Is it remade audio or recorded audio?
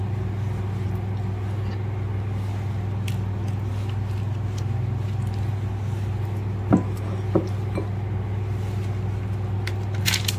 recorded